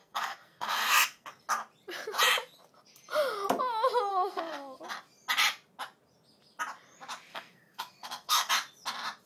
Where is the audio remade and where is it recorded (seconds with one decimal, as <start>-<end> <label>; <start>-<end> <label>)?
0.0-1.4 remade; 1.4-4.1 recorded; 4.1-4.8 remade; 4.8-7.3 recorded; 7.3-8.5 remade; 8.5-9.3 recorded

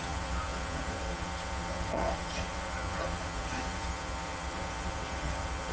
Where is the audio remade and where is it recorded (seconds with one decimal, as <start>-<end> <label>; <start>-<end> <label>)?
0.0-5.7 remade

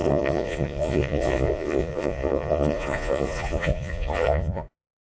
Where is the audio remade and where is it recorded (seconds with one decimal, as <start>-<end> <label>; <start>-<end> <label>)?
0.0-5.2 remade

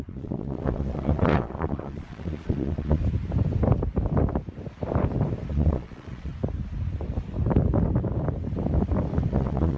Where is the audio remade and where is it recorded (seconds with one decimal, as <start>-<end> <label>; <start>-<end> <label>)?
0.0-3.0 remade; 3.0-5.5 recorded; 5.5-6.3 remade; 6.3-9.3 recorded; 9.3-9.8 remade